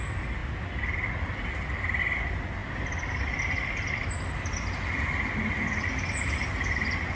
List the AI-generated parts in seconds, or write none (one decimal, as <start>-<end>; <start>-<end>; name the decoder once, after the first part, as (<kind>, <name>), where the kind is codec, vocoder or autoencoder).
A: none